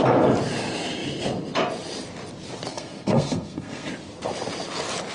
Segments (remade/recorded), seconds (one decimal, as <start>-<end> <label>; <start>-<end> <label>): 0.0-2.7 recorded; 2.7-3.9 remade; 3.9-5.1 recorded